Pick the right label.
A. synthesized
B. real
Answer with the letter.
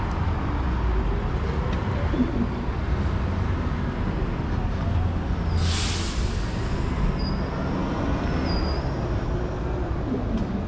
B